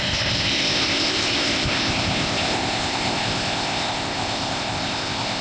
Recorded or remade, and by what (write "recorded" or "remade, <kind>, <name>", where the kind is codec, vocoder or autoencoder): remade, codec, ZipCodec